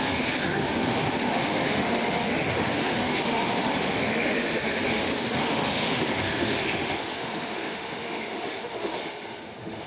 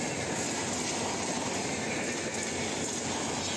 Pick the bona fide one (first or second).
second